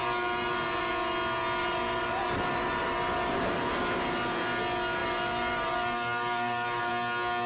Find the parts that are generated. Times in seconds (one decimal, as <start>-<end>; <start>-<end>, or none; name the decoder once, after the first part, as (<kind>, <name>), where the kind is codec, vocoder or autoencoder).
0.0-0.9 (vocoder, BigVGAN v2); 1.6-3.7; 5.0-6.9